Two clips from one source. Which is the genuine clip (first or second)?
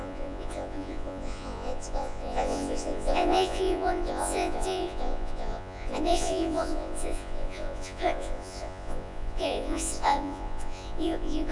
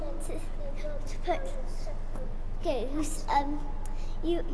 second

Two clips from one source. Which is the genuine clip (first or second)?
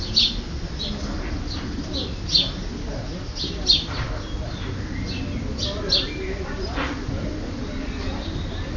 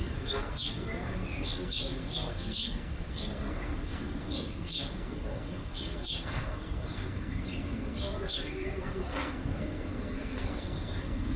first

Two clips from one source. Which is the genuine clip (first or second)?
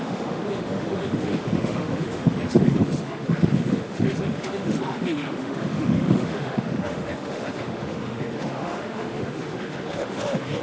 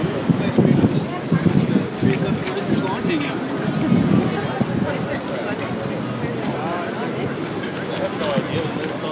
second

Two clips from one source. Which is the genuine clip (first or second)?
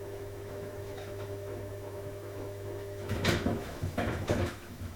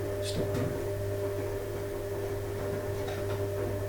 second